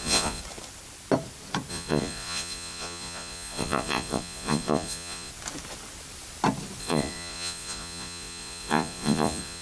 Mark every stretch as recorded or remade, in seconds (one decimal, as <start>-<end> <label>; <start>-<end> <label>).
0.0-0.4 remade; 0.4-1.7 recorded; 1.7-5.3 remade; 5.3-6.8 recorded; 6.8-9.6 remade